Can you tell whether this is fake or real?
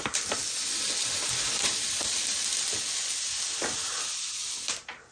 real